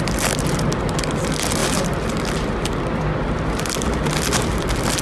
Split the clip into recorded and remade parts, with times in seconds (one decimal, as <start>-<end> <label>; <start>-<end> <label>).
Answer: 0.0-5.0 recorded